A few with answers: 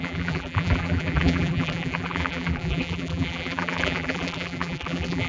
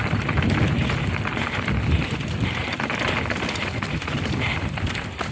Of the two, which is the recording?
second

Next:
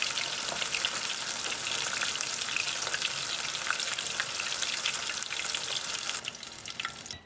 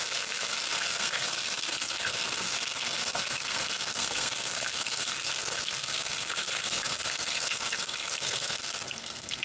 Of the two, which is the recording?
first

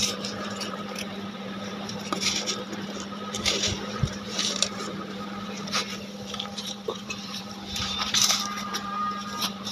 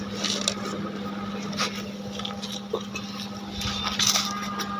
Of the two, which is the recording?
second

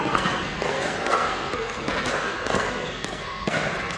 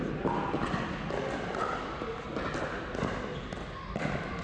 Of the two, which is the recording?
second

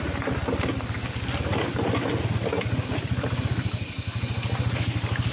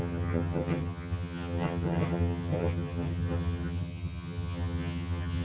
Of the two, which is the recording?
first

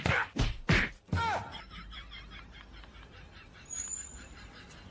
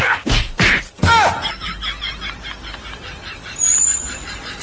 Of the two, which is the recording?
second